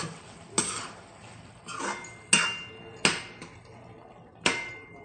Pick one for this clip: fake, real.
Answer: real